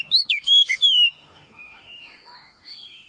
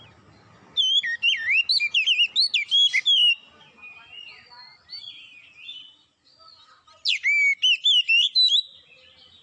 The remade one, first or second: first